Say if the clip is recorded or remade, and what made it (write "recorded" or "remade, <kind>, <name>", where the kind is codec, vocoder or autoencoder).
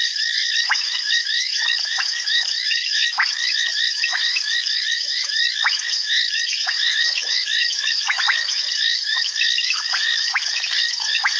remade, autoencoder, DAC-VAE